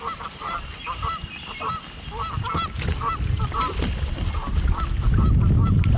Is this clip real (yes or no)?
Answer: yes